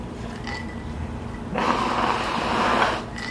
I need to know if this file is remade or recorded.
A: recorded